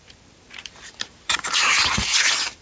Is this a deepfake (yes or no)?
yes